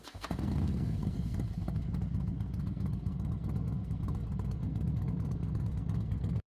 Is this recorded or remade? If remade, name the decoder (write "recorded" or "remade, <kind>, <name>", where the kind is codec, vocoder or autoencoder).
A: remade, codec, SNAC